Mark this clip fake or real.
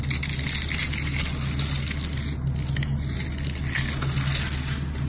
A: real